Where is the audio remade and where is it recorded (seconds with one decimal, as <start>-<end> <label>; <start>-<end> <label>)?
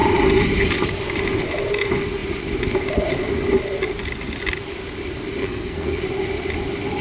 0.0-5.4 recorded; 5.4-6.0 remade; 6.0-7.0 recorded